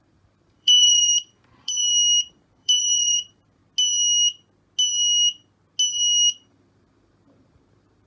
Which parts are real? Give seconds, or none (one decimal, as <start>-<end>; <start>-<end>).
1.8-2.3; 3.6-6.5